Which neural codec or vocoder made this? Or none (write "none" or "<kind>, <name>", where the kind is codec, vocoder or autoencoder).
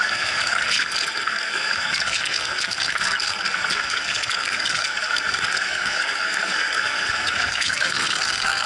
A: codec, SNAC